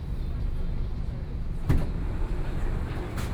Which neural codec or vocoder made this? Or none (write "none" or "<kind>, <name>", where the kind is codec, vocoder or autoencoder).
vocoder, BigVGAN v2